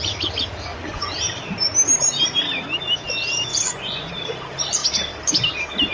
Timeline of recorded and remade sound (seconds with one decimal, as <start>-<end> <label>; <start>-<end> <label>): 0.0-0.7 recorded; 0.7-1.2 remade; 1.2-3.5 recorded; 3.5-4.1 remade; 4.1-5.9 recorded

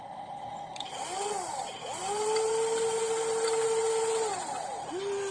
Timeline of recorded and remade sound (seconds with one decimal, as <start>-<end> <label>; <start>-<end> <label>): 0.0-5.3 recorded

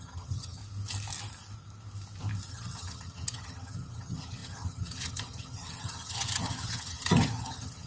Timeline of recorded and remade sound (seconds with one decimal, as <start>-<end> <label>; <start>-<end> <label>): 0.0-0.6 remade; 0.6-2.5 recorded; 2.5-7.9 remade

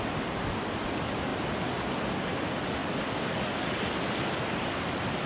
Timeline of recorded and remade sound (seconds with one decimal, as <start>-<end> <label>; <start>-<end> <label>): 0.0-5.3 recorded